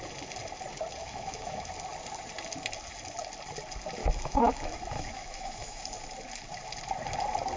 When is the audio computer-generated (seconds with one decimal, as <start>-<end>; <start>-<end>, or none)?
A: 1.0-1.7; 4.0-5.8